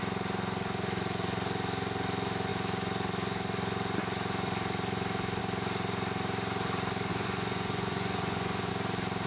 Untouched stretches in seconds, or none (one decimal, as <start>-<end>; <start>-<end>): 0.0-7.1; 8.7-9.3